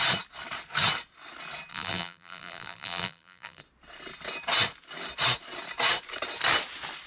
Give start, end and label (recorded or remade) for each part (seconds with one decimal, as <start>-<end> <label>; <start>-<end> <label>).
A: 0.0-1.7 recorded; 1.7-3.6 remade; 3.6-7.1 recorded